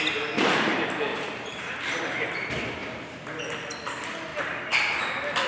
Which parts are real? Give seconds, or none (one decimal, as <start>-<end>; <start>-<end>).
0.0-1.1; 2.0-2.8; 3.4-5.5